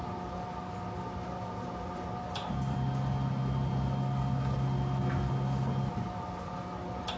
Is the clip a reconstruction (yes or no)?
no